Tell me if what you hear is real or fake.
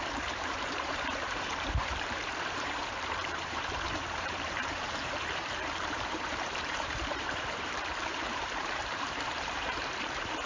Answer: fake